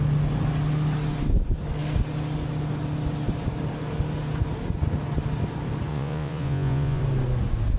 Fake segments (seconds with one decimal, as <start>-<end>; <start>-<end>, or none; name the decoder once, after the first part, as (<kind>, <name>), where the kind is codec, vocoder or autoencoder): 5.9-7.0 (vocoder, Vocos)